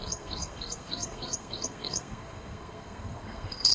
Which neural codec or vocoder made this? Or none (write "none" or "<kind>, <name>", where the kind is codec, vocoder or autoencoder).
codec, SNAC